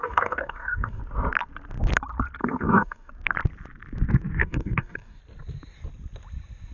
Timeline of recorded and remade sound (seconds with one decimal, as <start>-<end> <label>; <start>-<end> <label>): 0.0-1.0 remade; 1.0-2.4 recorded; 2.4-3.1 remade; 3.1-4.4 recorded; 4.4-5.2 remade; 5.2-6.7 recorded